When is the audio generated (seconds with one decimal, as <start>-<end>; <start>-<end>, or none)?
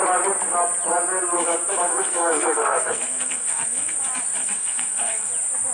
1.9-3.9; 4.4-5.3